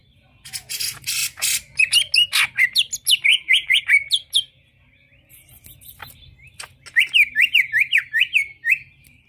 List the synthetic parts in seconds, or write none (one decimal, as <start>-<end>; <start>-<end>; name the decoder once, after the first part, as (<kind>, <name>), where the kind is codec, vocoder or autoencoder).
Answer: 3.3-3.8 (vocoder, BigVGAN v2)